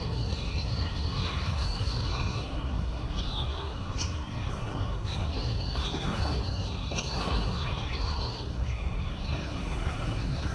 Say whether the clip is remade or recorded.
remade